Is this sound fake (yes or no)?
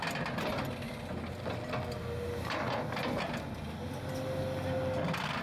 no